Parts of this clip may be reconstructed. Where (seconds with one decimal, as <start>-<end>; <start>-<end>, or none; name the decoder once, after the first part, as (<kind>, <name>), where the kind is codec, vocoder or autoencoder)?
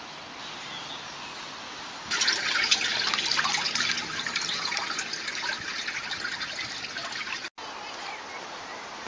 none